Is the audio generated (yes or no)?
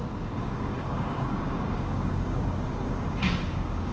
yes